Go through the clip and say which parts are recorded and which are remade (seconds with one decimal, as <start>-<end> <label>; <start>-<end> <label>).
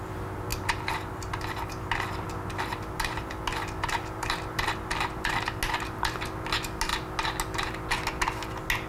0.0-8.9 recorded